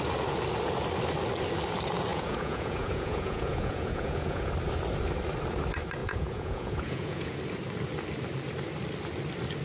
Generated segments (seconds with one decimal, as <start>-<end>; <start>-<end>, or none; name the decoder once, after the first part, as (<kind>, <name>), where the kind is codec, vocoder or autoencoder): 2.1-4.5 (vocoder, Vocos); 6.0-7.4

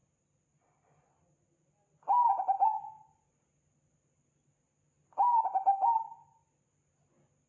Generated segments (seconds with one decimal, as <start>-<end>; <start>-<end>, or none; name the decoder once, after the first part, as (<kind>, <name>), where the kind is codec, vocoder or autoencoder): none

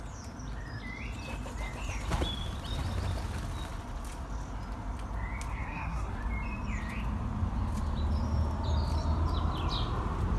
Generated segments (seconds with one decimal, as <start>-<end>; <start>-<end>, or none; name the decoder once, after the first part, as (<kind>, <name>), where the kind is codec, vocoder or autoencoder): 5.5-6.2 (codec, SNAC)

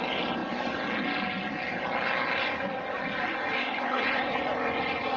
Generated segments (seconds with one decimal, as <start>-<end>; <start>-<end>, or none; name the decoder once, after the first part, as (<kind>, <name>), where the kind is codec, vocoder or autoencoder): 3.6-4.4 (codec, HILCodec)